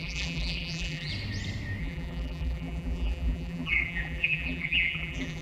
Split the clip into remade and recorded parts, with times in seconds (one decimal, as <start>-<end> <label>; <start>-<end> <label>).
0.0-1.1 remade; 1.1-1.8 recorded; 1.8-5.4 remade